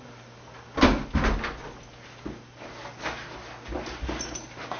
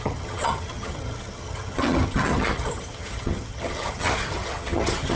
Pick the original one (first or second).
first